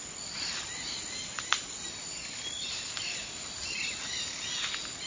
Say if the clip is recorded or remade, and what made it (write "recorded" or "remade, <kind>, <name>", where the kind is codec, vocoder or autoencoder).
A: recorded